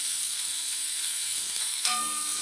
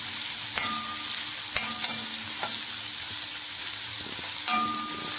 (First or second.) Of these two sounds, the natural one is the second